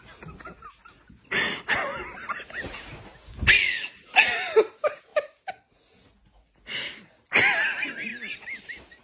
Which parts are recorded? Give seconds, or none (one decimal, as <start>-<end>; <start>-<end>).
0.0-5.1; 5.7-8.1